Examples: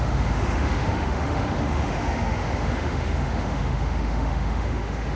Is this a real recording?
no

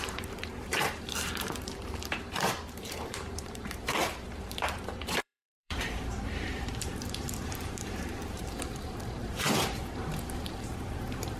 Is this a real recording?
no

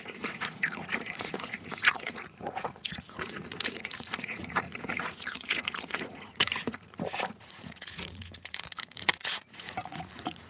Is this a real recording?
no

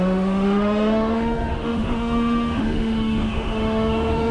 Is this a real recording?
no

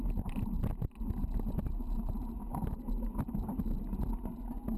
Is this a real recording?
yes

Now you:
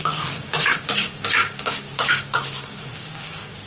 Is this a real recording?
no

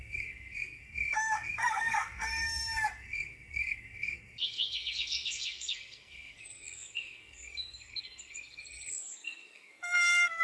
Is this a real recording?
no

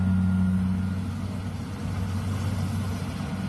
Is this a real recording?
yes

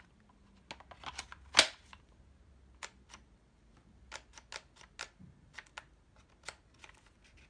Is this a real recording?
yes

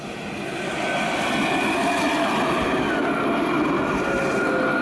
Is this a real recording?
yes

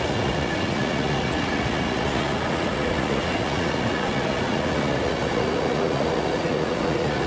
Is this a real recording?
no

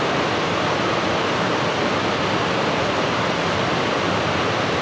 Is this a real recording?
yes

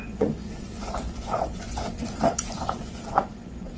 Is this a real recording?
no